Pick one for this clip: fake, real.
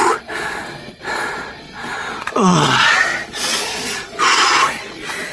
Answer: fake